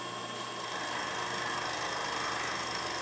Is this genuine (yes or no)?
yes